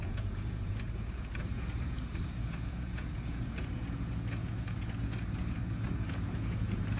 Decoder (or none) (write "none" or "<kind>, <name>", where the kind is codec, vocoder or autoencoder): vocoder, Vocos